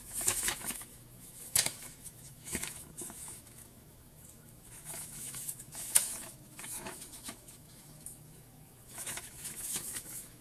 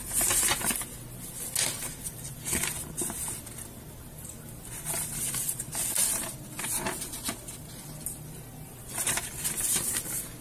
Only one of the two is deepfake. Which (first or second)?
first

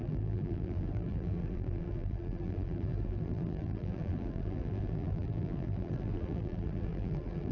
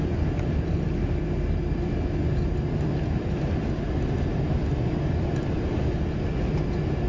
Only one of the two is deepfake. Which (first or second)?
first